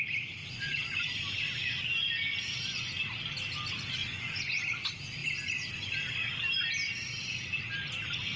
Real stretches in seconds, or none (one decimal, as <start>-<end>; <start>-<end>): 0.0-0.4; 1.2-4.0; 4.6-8.4